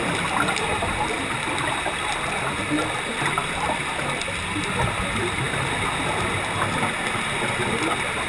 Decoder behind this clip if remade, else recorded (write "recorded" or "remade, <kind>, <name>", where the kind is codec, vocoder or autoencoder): recorded